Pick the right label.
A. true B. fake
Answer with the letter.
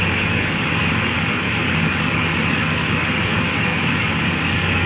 B